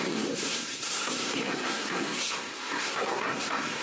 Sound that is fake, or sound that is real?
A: fake